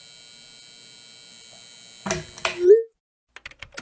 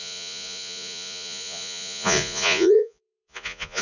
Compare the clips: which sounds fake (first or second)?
second